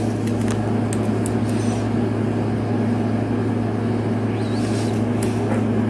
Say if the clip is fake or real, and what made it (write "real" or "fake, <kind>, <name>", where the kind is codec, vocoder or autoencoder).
real